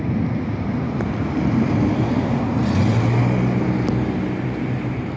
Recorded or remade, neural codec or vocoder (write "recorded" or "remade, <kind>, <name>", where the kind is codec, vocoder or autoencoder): recorded